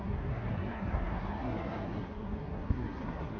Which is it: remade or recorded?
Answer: remade